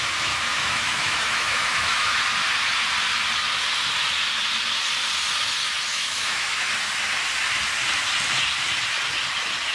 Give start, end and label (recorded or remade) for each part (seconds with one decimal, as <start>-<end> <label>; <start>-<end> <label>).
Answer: 0.0-0.5 recorded; 0.5-2.2 remade; 2.2-5.9 recorded; 5.9-6.7 remade; 6.7-9.7 recorded